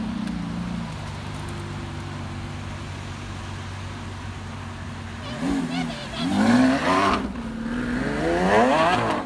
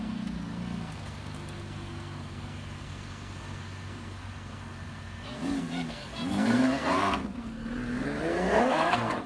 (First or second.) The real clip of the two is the first